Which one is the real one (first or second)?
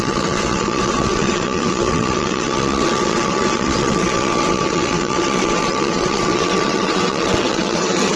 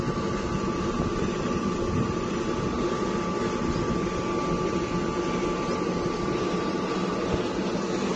second